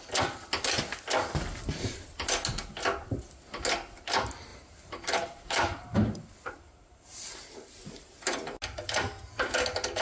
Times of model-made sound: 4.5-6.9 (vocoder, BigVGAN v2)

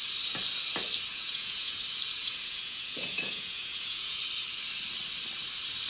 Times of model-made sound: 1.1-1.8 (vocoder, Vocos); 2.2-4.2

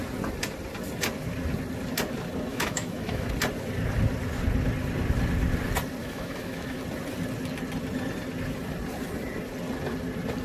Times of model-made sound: 2.5-3.3 (autoencoder, DAC-VAE); 6.0-6.8